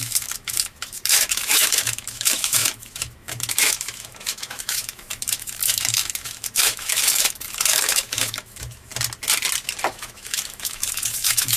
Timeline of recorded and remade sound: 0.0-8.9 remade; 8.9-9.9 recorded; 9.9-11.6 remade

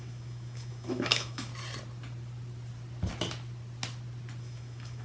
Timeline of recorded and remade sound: 0.0-1.5 remade; 1.5-4.4 recorded; 4.4-5.0 remade

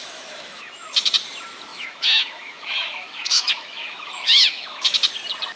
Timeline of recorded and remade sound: 0.0-1.1 remade; 1.1-1.7 recorded; 1.7-5.1 remade; 5.1-5.6 recorded

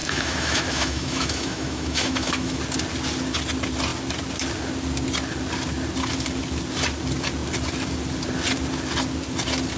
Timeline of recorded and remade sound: 0.0-2.6 remade; 2.6-9.8 recorded